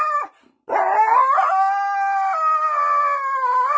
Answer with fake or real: real